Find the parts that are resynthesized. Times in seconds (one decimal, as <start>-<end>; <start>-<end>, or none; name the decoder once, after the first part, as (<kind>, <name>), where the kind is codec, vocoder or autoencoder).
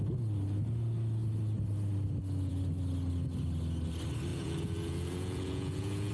4.3-6.1 (vocoder, Vocos)